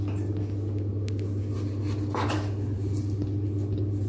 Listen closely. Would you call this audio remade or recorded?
recorded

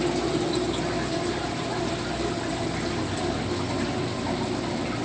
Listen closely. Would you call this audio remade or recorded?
recorded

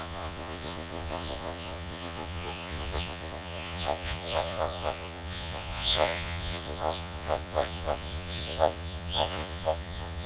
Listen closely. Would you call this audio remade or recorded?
remade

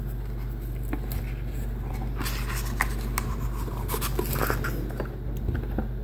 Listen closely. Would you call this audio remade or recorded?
recorded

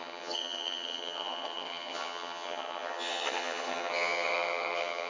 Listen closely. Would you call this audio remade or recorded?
remade